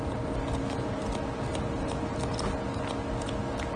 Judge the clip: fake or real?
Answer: real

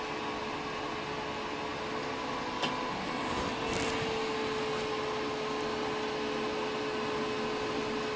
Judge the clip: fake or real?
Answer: real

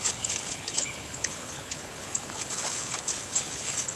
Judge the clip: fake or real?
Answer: fake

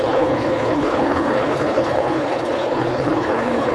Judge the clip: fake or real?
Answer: fake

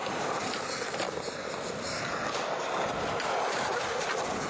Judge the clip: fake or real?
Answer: real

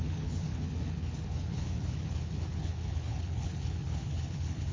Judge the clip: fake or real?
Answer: fake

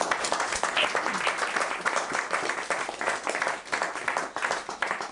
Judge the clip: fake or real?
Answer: real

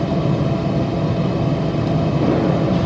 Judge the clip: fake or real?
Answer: real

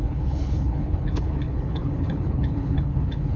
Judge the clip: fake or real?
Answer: fake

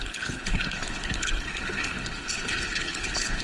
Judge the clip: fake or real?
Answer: fake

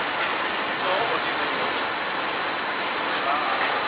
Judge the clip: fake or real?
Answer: real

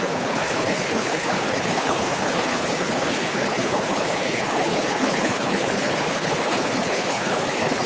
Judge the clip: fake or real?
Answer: fake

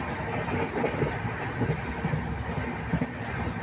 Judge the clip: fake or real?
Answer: real